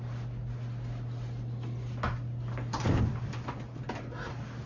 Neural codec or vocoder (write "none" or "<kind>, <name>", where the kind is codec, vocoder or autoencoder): none